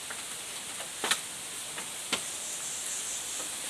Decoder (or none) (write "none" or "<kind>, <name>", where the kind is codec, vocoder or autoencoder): none